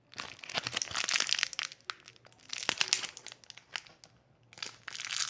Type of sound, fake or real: real